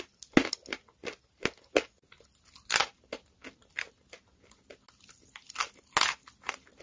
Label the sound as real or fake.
real